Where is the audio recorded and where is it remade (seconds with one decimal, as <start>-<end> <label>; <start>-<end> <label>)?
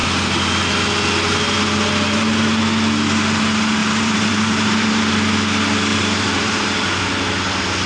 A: 0.0-3.8 recorded; 3.8-5.1 remade; 5.1-5.9 recorded; 5.9-6.7 remade; 6.7-7.9 recorded